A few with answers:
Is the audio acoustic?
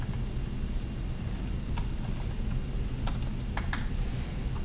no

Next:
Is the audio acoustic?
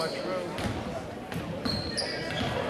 yes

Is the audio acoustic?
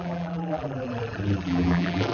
no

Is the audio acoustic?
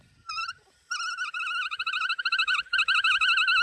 no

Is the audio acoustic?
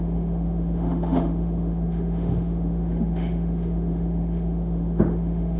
no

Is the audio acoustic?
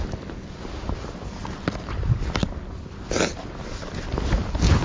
yes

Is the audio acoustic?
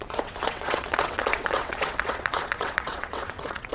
no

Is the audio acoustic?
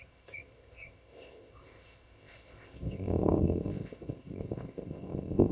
no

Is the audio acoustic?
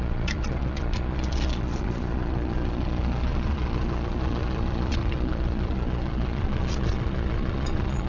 no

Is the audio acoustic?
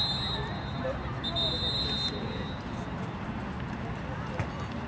yes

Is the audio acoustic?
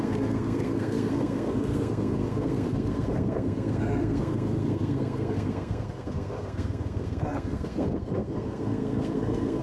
no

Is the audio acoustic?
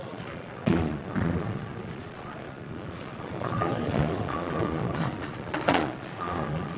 no